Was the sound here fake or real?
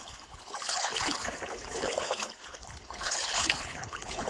fake